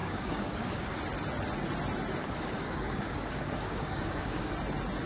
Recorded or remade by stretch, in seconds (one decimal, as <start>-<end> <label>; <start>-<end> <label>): 0.0-1.0 remade; 1.0-2.2 recorded; 2.2-4.5 remade; 4.5-5.1 recorded

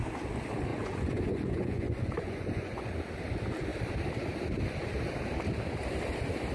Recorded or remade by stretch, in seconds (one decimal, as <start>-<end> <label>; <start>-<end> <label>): 0.0-0.7 recorded; 0.7-2.9 remade; 2.9-6.5 recorded

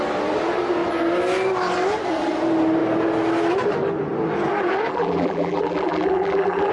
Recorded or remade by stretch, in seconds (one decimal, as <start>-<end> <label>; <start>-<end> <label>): 0.0-4.9 recorded; 4.9-6.7 remade

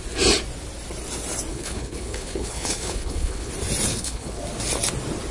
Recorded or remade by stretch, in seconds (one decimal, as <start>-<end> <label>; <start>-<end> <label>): 0.0-1.5 recorded; 1.5-3.5 remade; 3.5-3.9 recorded; 3.9-4.4 remade; 4.4-5.3 recorded